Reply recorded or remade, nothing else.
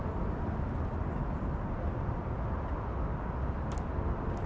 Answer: recorded